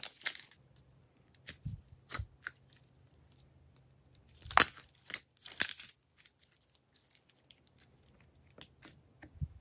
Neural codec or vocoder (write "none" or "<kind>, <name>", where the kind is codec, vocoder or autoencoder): none